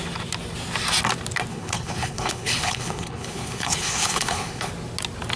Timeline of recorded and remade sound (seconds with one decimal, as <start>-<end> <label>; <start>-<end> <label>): 0.0-1.5 recorded; 1.5-4.7 remade; 4.7-5.4 recorded